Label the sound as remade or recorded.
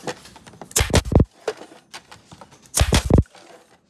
recorded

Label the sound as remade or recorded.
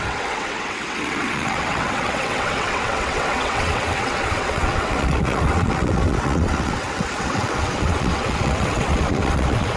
remade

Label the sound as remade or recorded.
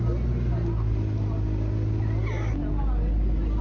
recorded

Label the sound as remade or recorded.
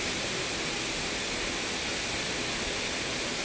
recorded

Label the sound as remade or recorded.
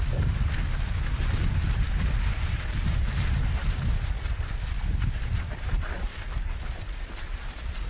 recorded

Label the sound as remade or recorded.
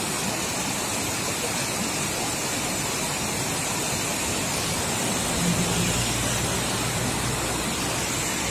recorded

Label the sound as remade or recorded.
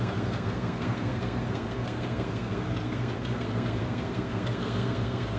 remade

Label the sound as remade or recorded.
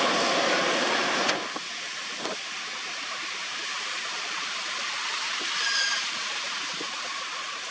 recorded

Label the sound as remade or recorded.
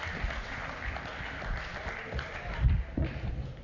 recorded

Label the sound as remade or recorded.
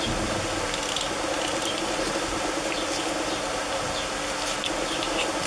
recorded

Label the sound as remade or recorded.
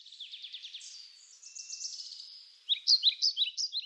recorded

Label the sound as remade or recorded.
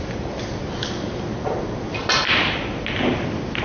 recorded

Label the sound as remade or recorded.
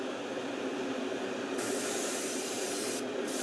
recorded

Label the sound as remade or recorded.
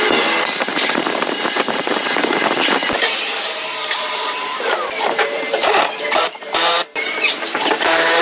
remade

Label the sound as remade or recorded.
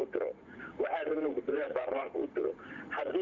remade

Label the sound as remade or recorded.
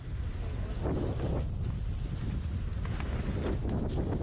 recorded